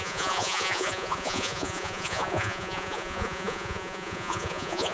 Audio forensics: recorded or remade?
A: remade